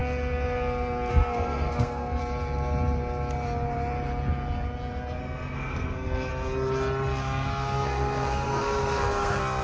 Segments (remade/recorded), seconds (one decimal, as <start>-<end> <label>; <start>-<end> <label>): 0.0-1.1 recorded; 1.1-2.2 remade; 2.2-5.2 recorded; 5.2-6.3 remade; 6.3-7.2 recorded; 7.2-9.6 remade